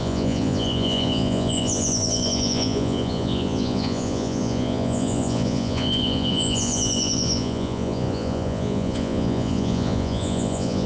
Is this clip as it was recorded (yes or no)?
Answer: no